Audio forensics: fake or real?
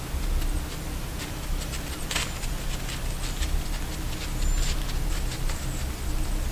real